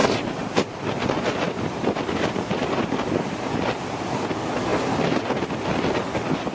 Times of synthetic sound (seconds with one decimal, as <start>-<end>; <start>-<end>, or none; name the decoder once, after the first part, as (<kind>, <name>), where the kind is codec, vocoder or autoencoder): 0.0-3.9 (vocoder, BigVGAN v2)